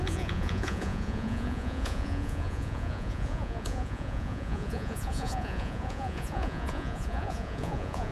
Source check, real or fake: fake